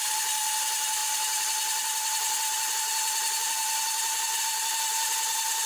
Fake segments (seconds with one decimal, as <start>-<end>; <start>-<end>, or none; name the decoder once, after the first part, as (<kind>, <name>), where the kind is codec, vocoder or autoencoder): none